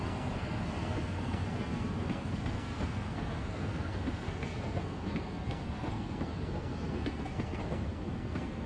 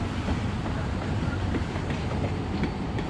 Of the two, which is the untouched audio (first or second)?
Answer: second